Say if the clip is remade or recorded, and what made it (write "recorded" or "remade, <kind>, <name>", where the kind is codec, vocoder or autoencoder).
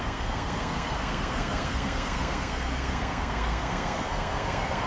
remade, codec, SNAC